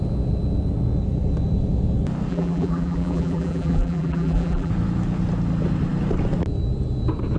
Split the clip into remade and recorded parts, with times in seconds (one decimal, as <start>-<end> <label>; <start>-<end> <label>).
0.0-2.3 recorded; 2.3-4.7 remade; 4.7-7.4 recorded